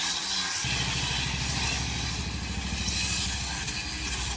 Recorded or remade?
recorded